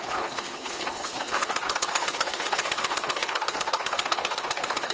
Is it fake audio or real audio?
fake